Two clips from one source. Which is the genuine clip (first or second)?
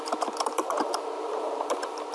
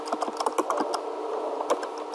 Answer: second